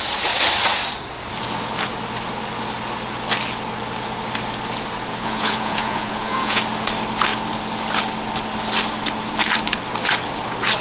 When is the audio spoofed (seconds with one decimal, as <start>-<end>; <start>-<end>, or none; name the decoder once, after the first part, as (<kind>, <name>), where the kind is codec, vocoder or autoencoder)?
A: 5.1-6.6 (vocoder, Vocos)